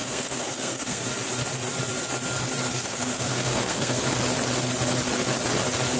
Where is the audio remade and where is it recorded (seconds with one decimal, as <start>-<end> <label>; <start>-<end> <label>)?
0.0-1.0 remade; 1.0-2.7 recorded; 2.7-4.0 remade; 4.0-6.0 recorded